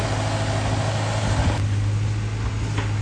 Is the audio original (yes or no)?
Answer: yes